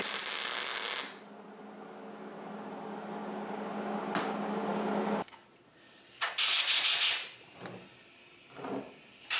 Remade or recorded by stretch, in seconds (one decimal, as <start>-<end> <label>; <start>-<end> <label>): 0.0-9.4 recorded